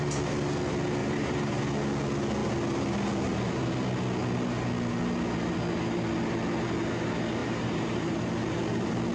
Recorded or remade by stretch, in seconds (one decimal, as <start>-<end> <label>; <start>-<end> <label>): 0.0-1.0 recorded; 1.0-1.6 remade; 1.6-7.4 recorded; 7.4-8.3 remade; 8.3-9.1 recorded

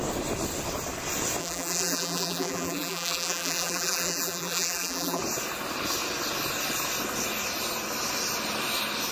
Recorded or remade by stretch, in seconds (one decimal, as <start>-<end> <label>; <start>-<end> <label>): 0.0-1.4 recorded; 1.4-5.2 remade; 5.2-9.1 recorded